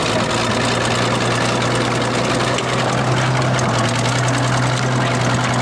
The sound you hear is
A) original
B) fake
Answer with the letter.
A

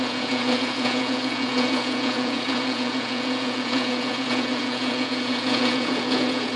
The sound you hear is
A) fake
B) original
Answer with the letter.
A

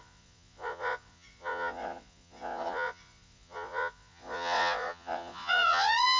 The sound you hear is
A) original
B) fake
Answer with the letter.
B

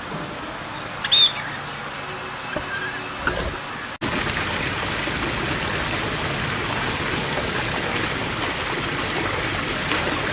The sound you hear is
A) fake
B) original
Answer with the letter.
B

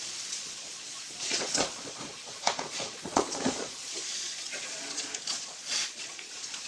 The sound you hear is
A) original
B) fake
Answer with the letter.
B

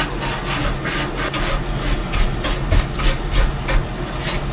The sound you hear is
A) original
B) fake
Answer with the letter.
A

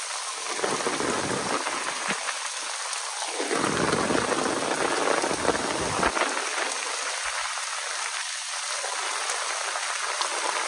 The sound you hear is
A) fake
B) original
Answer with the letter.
B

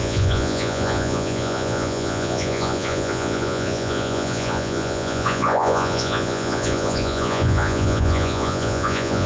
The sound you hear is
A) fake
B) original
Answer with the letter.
A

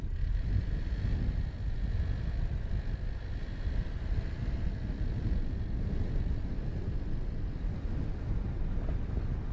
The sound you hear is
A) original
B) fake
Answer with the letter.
A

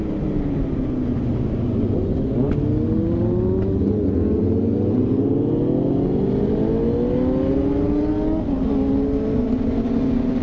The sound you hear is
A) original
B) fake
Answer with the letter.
A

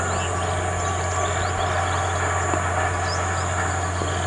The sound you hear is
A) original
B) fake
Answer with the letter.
A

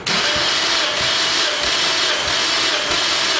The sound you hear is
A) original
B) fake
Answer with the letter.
A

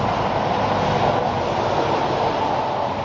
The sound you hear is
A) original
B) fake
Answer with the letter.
A